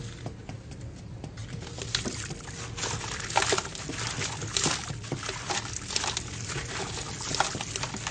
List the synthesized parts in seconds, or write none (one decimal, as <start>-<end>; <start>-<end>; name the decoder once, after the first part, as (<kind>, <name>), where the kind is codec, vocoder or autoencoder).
none

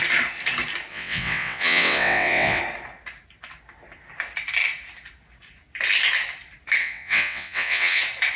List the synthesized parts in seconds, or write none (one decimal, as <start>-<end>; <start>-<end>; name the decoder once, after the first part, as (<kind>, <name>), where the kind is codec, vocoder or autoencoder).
0.9-2.6 (vocoder, WaveNeXt); 6.8-8.0

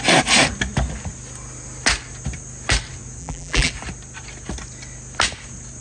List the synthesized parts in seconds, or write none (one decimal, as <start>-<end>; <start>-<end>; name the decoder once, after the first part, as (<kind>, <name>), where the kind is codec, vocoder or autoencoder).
3.2-3.7 (vocoder, BigVGAN v2)

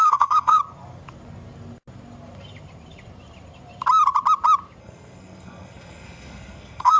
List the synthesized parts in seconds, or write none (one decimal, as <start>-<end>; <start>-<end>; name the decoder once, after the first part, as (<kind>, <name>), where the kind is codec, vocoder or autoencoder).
0.0-0.6 (codec, SNAC); 4.8-7.0

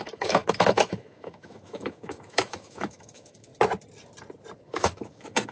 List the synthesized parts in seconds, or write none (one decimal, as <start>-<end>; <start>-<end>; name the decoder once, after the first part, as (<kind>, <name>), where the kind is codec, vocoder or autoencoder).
0.0-3.5 (autoencoder, DAC-VAE); 4.7-5.5